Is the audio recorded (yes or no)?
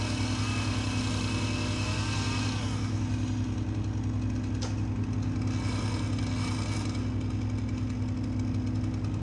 yes